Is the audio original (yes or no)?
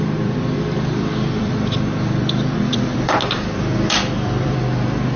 no